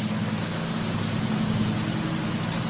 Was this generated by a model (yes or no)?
no